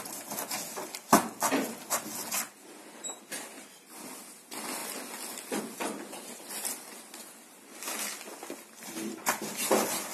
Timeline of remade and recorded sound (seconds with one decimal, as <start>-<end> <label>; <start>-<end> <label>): 0.0-10.1 recorded